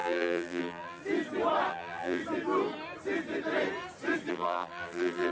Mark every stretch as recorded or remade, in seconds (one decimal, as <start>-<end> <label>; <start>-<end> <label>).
0.0-1.0 remade; 1.0-1.7 recorded; 1.7-2.2 remade; 2.2-4.3 recorded; 4.3-5.3 remade